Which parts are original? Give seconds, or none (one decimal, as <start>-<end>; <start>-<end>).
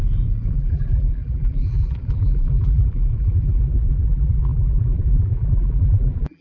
0.0-0.5